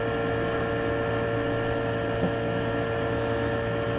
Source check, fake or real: real